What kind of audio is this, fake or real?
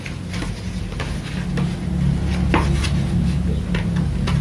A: real